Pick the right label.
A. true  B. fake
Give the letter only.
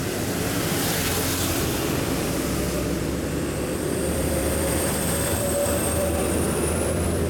B